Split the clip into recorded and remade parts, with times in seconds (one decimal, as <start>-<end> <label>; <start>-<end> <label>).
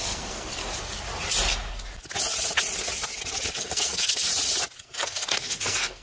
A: 0.0-0.6 remade; 0.6-3.6 recorded; 3.6-4.3 remade; 4.3-4.8 recorded; 4.8-6.0 remade